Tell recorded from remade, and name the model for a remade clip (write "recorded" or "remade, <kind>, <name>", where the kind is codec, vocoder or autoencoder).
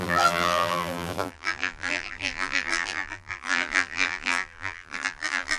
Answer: remade, vocoder, BigVGAN v2